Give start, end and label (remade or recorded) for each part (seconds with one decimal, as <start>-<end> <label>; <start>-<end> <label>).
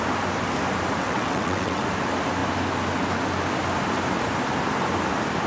0.0-1.0 recorded; 1.0-1.8 remade; 1.8-5.5 recorded